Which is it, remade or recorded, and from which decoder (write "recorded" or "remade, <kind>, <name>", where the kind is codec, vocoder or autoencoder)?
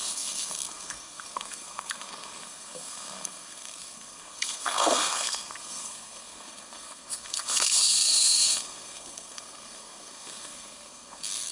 remade, codec, SNAC